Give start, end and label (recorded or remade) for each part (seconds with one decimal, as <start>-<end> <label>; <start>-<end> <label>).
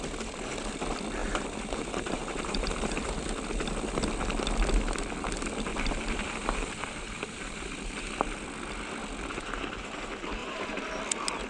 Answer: 0.0-1.2 recorded; 1.2-3.3 remade; 3.3-5.7 recorded; 5.7-8.1 remade; 8.1-10.4 recorded; 10.4-11.0 remade; 11.0-11.5 recorded